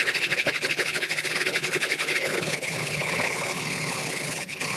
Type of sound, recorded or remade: remade